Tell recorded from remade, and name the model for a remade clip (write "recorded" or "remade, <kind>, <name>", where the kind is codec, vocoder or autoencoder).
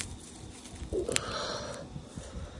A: recorded